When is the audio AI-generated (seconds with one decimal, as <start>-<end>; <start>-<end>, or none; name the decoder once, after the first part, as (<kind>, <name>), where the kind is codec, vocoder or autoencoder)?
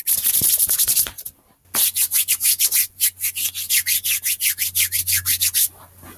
none